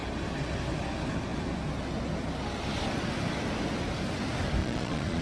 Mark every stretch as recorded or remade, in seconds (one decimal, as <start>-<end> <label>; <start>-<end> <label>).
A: 0.0-4.6 recorded; 4.6-5.2 remade